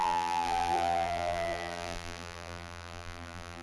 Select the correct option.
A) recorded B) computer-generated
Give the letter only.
B